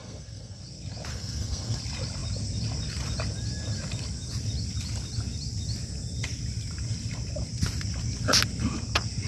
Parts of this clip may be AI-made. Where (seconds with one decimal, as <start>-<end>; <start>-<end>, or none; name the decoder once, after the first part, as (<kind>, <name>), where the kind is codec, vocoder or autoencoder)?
0.0-0.6 (codec, SNAC); 1.1-1.8